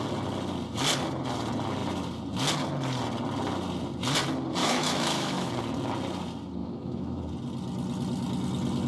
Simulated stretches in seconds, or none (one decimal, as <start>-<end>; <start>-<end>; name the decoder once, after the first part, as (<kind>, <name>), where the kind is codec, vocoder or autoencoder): 4.6-5.5 (autoencoder, DAC-VAE); 6.6-7.2